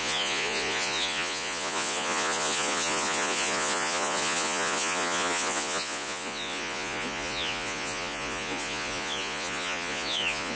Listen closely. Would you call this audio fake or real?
fake